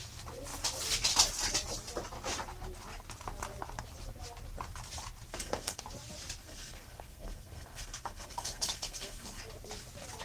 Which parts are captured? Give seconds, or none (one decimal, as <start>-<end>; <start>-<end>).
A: 0.0-5.3; 5.8-6.4; 9.4-10.2